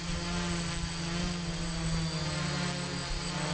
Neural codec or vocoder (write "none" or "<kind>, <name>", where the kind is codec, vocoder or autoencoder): none